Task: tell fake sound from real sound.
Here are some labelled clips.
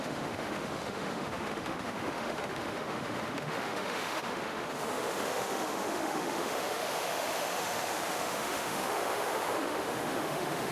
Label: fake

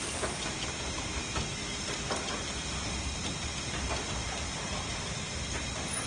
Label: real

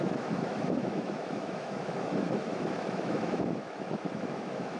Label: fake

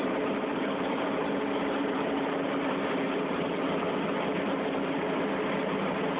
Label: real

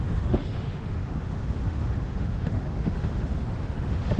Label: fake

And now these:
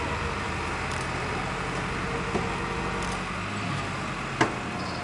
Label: real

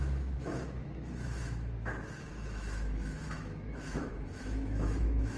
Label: fake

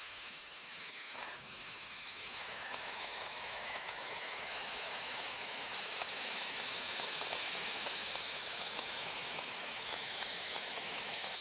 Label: fake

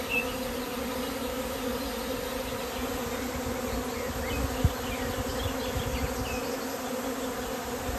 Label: real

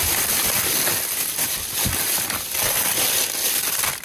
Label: real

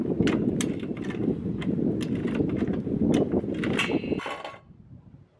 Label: real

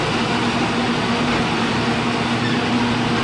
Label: real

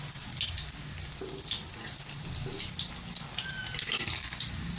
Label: real